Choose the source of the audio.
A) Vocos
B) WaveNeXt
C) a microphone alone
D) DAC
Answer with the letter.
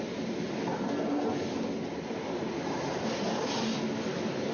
C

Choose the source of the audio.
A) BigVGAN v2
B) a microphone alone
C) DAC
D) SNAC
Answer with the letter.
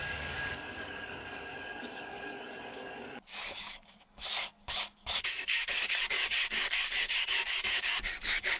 C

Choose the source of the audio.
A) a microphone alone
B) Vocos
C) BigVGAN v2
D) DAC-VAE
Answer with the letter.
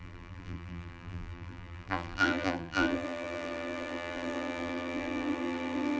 C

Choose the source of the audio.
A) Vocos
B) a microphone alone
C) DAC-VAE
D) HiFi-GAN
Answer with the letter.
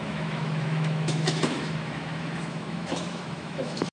C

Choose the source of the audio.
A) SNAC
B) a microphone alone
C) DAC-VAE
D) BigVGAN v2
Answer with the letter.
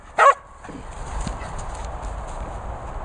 B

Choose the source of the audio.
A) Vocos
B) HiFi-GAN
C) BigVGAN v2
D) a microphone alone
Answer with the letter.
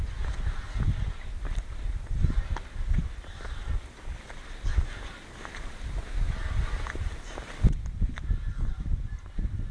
D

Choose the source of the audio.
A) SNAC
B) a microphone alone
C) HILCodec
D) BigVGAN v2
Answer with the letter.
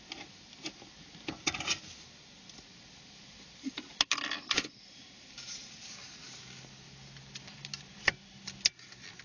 B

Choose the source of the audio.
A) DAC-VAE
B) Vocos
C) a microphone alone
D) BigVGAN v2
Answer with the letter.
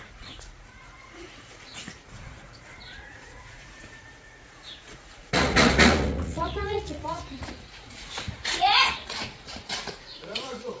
B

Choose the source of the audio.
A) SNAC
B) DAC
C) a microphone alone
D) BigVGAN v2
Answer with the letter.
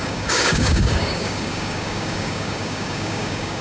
B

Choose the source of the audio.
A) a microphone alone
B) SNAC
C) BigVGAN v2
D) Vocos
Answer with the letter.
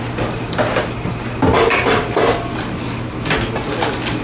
A